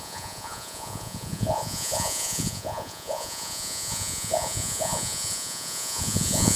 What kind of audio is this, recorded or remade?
remade